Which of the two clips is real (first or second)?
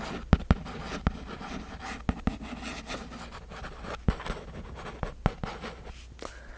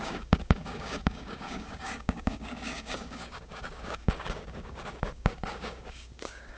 first